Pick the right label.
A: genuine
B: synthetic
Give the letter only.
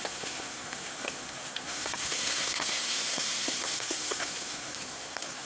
B